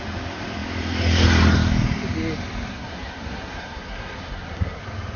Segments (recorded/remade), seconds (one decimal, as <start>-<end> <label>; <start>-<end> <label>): 0.0-2.7 recorded; 2.7-4.8 remade; 4.8-5.2 recorded